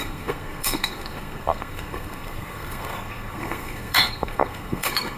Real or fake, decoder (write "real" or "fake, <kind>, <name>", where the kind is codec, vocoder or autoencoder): fake, codec, SNAC